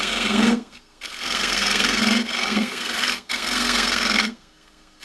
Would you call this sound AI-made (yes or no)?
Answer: yes